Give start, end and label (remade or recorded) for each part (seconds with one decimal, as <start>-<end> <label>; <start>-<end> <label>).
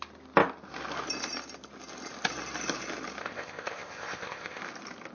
0.0-3.2 recorded; 3.2-4.6 remade; 4.6-5.1 recorded